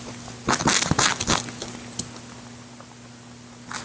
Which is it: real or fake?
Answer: real